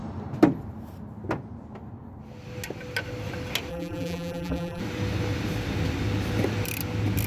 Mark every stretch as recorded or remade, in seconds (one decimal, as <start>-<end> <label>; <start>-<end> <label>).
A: 0.0-3.7 recorded; 3.7-4.8 remade; 4.8-7.3 recorded